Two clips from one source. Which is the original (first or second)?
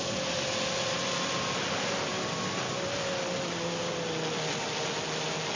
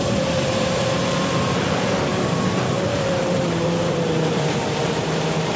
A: first